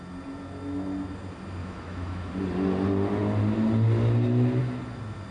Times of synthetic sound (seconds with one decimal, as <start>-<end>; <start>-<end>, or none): 1.6-2.3